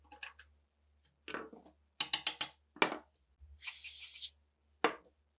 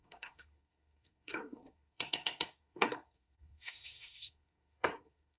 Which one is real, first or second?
first